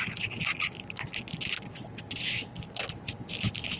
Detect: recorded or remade recorded